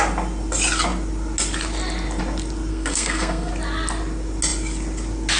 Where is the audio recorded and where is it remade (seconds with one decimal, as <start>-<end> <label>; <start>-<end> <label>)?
0.0-2.7 recorded; 2.7-3.5 remade; 3.5-5.4 recorded